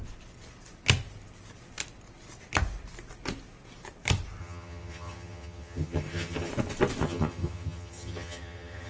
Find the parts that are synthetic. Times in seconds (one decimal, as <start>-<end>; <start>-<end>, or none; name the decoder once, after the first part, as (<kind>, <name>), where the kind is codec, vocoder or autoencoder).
4.4-6.5 (vocoder, HiFi-GAN); 7.0-8.9